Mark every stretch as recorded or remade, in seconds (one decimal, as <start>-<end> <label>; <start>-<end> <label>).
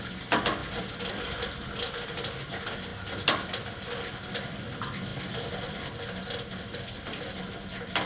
0.0-8.1 recorded